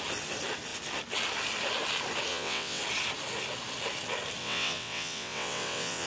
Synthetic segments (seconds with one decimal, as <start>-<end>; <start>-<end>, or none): 2.3-2.8; 4.4-6.1